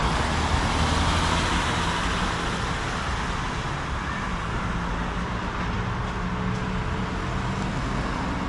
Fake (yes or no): no